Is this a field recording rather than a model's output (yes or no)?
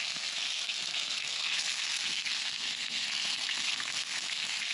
no